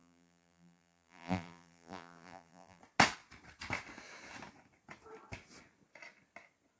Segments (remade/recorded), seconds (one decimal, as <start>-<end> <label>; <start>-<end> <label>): 0.0-2.8 remade; 2.8-6.8 recorded